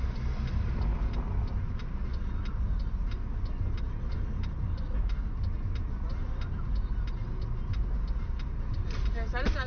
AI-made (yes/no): no